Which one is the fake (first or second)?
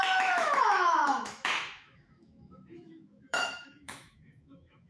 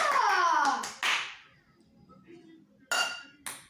first